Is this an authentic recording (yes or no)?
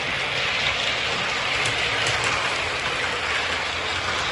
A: yes